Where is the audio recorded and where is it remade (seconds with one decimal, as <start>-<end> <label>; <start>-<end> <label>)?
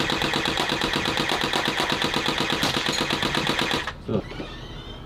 0.0-5.1 recorded